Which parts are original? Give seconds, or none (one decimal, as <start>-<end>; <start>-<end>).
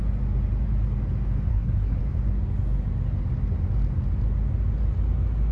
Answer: 0.0-1.5; 2.0-5.5